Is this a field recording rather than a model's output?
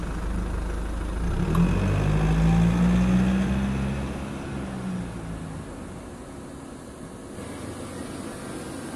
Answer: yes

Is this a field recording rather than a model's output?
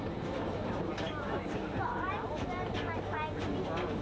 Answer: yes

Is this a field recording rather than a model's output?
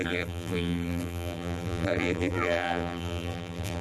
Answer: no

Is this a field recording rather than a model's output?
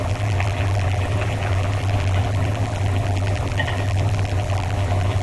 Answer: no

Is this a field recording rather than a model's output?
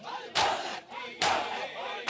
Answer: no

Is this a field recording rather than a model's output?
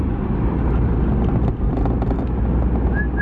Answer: yes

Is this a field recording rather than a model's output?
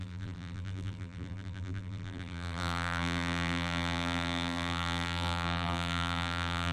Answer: no